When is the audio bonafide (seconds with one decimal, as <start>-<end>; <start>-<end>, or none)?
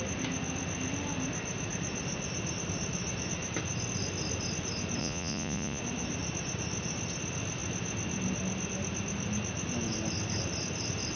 0.0-5.0; 5.8-11.2